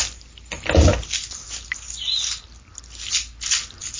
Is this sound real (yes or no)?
yes